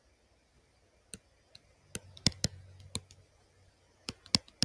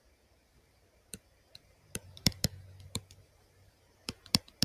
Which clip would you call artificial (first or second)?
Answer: second